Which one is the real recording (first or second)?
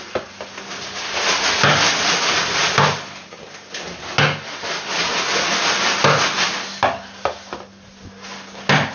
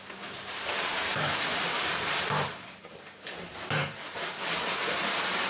first